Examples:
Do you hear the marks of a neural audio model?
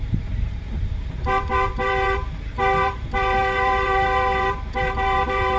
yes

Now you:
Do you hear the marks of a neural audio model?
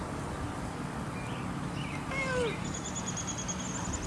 no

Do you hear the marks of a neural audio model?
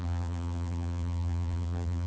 yes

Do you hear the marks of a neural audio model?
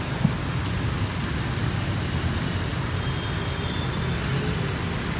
no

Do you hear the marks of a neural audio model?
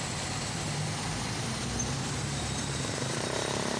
yes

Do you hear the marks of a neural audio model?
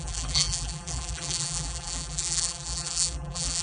yes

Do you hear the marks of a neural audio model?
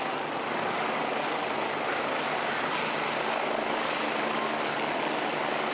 no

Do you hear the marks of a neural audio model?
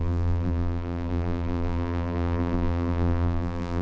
yes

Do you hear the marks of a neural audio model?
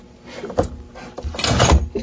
no